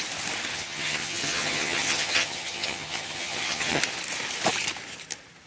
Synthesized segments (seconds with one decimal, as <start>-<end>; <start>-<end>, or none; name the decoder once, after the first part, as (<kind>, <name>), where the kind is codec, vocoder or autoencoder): 0.5-3.8 (vocoder, HiFi-GAN)